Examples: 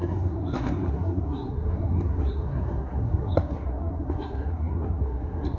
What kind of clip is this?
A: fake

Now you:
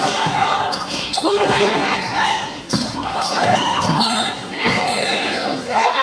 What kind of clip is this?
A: fake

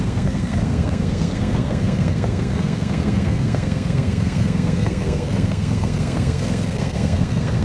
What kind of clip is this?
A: fake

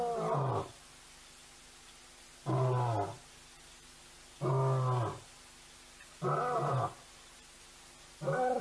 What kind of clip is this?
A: real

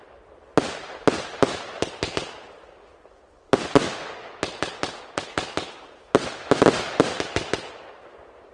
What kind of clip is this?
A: real